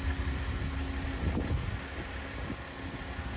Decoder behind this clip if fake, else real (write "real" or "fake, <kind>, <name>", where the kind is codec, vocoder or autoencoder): real